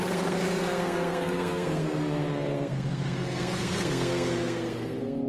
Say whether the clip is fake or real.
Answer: fake